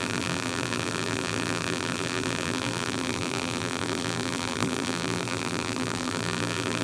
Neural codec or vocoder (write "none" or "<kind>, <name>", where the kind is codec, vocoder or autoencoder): vocoder, BigVGAN v2